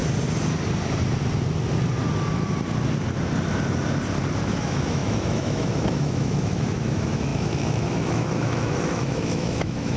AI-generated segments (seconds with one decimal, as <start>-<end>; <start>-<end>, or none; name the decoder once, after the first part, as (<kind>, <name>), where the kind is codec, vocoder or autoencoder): 4.4-10.0 (autoencoder, DAC-VAE)